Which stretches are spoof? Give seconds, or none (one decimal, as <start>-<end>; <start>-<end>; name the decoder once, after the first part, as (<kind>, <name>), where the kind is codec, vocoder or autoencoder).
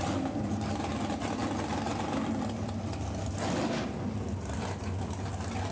none